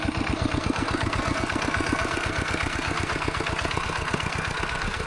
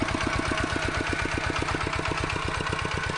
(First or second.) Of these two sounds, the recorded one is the second